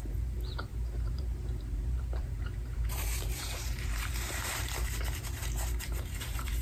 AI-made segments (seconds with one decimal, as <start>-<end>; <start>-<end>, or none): 0.0-6.6